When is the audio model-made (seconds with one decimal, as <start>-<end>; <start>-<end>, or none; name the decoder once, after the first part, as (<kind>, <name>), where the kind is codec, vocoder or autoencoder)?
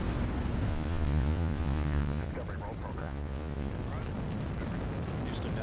0.7-2.3 (vocoder, Vocos); 3.0-3.7